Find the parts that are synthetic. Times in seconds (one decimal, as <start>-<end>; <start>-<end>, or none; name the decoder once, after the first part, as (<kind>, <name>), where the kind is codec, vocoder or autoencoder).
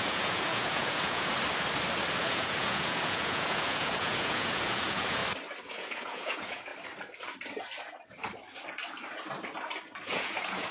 0.0-1.3 (vocoder, Vocos); 2.2-5.2; 5.7-6.7; 10.0-10.7